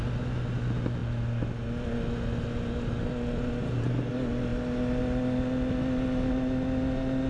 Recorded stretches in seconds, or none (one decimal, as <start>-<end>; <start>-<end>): 0.0-7.3